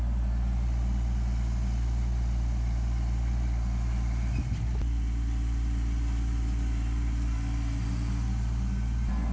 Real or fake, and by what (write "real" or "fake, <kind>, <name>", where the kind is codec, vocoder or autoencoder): real